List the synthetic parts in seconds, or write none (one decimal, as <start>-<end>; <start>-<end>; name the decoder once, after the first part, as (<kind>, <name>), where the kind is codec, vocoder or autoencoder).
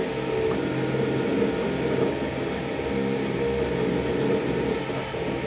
none